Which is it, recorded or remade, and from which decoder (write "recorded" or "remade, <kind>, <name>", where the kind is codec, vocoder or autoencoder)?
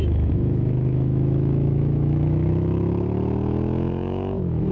remade, autoencoder, DAC-VAE